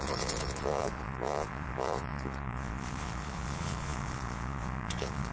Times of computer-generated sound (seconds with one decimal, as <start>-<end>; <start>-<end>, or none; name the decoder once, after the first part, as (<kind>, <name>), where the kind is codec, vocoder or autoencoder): 0.0-5.3 (vocoder, Vocos)